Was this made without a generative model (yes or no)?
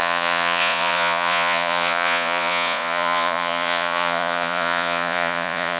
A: no